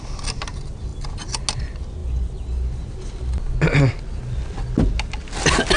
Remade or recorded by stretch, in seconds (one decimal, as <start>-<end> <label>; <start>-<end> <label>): 0.0-5.8 recorded